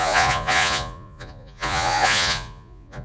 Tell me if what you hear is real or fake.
fake